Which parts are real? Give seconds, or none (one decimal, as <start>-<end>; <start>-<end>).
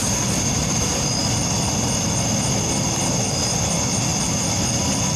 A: 0.0-5.2